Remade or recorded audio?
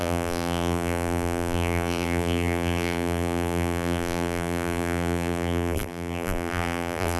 remade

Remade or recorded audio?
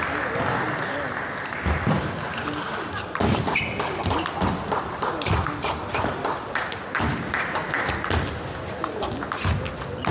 recorded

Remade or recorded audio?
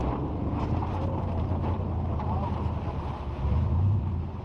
remade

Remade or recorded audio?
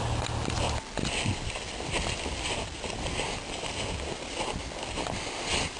recorded